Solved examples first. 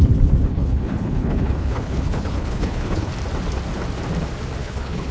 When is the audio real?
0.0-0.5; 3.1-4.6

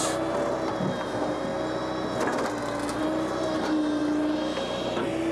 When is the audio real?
0.0-5.3

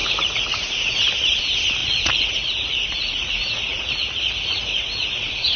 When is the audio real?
1.0-1.8

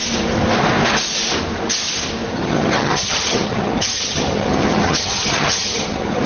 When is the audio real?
0.0-2.3

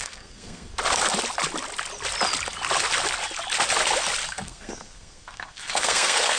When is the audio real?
0.7-4.3

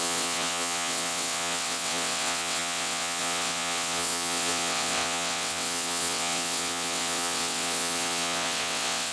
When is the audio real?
none